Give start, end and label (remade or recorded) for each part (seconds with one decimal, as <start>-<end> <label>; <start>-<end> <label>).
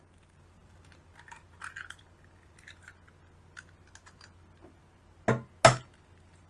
0.0-6.5 recorded